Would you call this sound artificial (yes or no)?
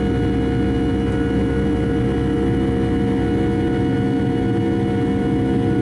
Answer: no